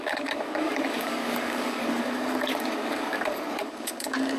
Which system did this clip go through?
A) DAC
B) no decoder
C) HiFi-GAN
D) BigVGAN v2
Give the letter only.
A